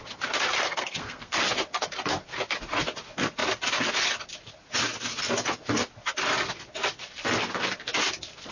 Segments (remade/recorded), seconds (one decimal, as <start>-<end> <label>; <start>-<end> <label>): 0.0-0.6 recorded; 0.6-1.4 remade; 1.4-8.5 recorded